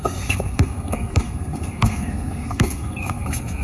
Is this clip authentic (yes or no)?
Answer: no